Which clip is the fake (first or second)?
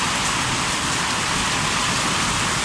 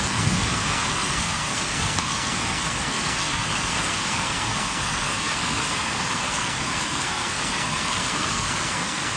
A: second